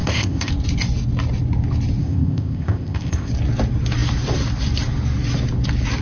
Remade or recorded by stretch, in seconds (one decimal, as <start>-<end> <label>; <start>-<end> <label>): 0.0-0.5 remade; 0.5-2.0 recorded; 2.0-3.3 remade; 3.3-6.0 recorded